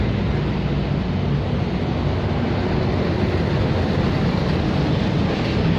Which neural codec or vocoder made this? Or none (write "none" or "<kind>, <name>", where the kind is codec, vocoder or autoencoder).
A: none